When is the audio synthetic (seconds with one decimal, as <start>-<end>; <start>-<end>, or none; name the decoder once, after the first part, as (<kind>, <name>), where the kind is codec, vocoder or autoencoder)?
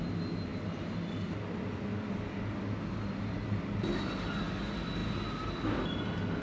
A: none